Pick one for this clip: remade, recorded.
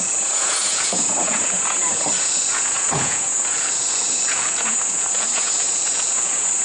remade